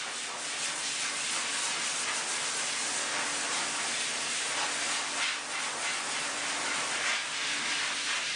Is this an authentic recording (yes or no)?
yes